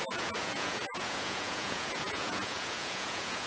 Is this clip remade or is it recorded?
remade